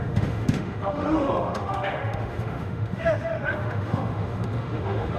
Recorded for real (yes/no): no